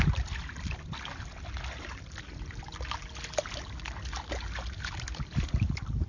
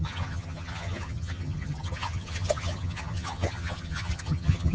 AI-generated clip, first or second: second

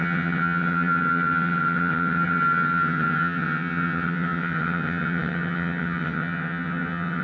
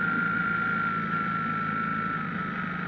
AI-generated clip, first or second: first